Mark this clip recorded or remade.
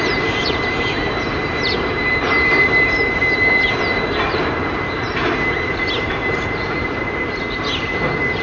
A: remade